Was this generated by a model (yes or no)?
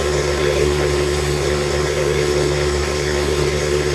yes